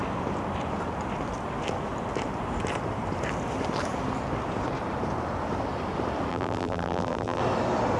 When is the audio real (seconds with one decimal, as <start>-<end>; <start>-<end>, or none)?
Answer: 0.0-6.3; 7.4-8.0